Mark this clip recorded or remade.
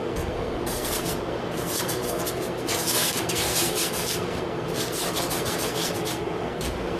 remade